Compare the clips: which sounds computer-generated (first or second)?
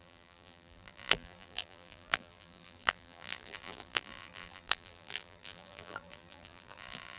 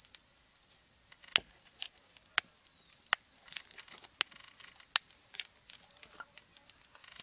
first